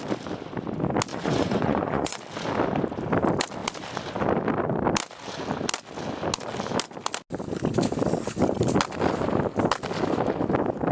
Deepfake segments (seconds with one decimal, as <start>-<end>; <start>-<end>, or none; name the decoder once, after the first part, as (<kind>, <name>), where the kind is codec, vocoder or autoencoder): 1.1-2.2 (vocoder, Vocos)